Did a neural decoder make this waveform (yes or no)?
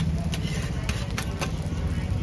no